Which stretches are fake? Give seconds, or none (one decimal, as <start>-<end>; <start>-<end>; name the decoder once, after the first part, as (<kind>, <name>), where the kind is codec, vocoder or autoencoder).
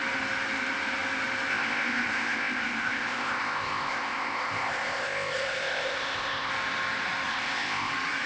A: 1.5-6.5 (codec, ZipCodec); 7.3-7.9